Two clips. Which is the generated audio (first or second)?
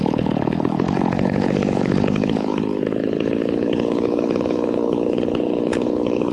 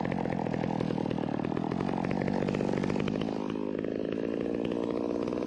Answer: first